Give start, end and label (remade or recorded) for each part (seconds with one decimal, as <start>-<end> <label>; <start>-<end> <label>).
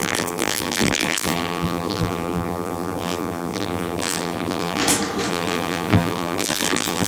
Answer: 0.0-4.8 remade; 4.8-5.3 recorded; 5.3-7.1 remade